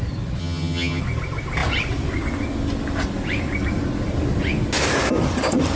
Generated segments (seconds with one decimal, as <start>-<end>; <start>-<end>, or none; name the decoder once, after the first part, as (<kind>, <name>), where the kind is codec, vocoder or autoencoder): 0.4-1.0 (vocoder, HiFi-GAN)